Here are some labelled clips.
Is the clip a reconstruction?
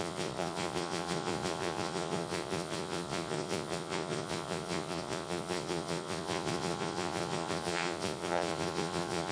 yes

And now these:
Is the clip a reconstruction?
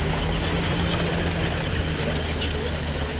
no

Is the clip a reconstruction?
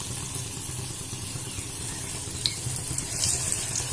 no